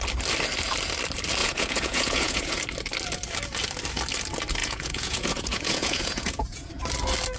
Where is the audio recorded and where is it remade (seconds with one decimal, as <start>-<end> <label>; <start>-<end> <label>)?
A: 0.0-1.4 recorded; 1.4-2.6 remade; 2.6-4.6 recorded; 4.6-6.7 remade; 6.7-7.4 recorded